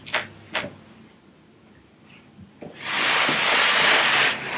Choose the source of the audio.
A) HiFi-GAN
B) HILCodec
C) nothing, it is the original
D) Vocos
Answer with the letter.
C